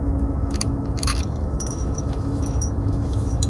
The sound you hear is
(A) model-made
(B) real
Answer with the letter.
A